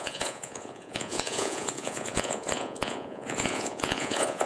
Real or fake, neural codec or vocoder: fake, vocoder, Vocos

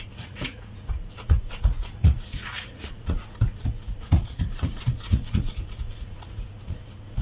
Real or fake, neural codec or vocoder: fake, vocoder, Vocos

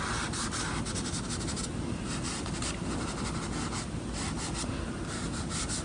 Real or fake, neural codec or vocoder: real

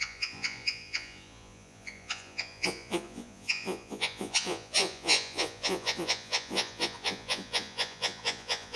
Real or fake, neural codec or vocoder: fake, vocoder, Vocos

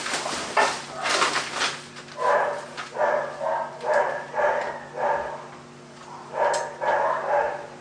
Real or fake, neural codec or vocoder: real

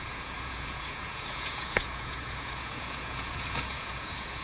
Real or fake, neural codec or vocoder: fake, vocoder, Vocos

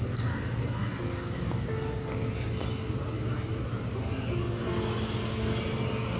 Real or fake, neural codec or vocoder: real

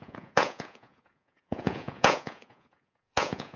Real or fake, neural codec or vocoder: fake, vocoder, Vocos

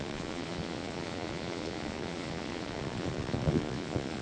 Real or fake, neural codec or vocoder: fake, vocoder, Vocos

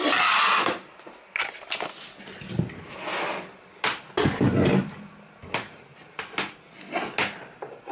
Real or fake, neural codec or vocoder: real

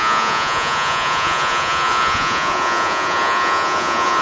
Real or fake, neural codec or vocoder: fake, vocoder, Vocos